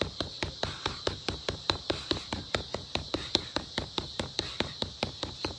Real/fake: real